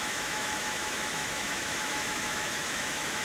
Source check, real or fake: fake